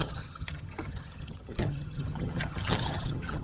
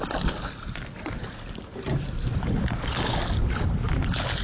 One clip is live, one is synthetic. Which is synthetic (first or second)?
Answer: first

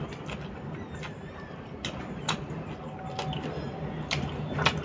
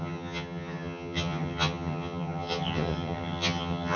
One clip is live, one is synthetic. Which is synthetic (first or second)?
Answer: second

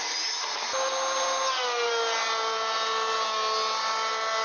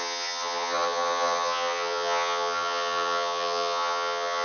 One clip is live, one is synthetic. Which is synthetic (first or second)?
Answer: second